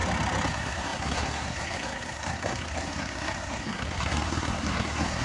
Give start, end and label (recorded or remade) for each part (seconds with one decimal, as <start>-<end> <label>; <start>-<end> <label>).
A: 0.0-0.5 recorded; 0.5-5.2 remade